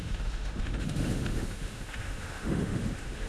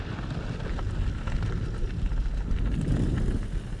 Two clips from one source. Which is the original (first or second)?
second